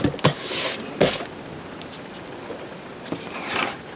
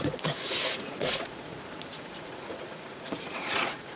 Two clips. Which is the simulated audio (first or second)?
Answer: second